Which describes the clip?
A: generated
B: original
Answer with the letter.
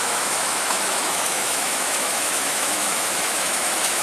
A